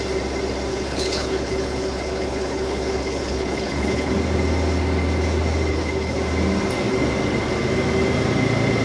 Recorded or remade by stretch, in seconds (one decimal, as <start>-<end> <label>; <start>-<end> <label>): 0.0-0.7 recorded; 0.7-4.1 remade; 4.1-5.7 recorded; 5.7-6.2 remade; 6.2-8.8 recorded